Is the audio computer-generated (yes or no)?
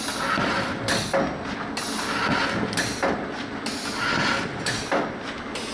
no